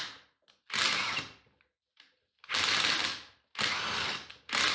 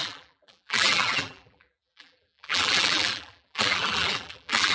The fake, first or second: second